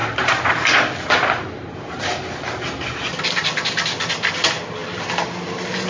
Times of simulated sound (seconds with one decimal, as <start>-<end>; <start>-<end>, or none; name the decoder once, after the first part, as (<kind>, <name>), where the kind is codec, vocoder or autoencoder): none